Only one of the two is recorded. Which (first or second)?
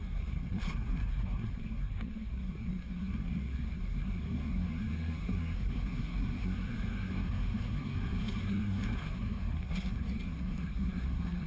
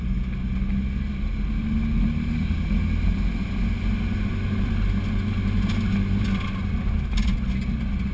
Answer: second